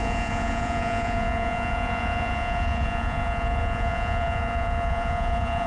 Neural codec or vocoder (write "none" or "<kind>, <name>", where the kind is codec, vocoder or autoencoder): vocoder, Vocos